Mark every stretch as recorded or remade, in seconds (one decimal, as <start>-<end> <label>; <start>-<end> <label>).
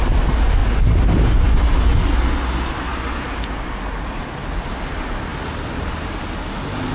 0.0-2.9 recorded; 2.9-3.8 remade; 3.8-6.9 recorded